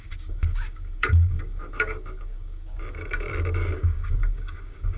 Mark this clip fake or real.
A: fake